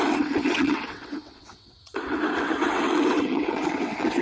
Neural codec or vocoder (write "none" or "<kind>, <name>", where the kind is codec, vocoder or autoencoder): vocoder, WaveNeXt